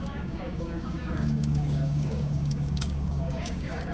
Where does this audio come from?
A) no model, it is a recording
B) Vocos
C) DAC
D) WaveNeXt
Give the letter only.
C